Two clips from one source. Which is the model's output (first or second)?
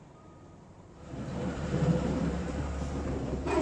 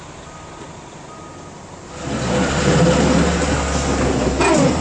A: first